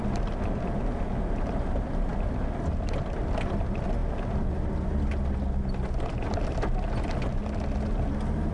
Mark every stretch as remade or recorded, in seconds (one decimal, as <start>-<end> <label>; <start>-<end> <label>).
0.0-8.5 recorded